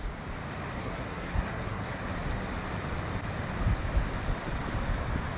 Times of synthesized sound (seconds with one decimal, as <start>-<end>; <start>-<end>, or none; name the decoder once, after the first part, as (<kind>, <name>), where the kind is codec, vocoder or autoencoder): 0.8-2.1 (codec, SNAC)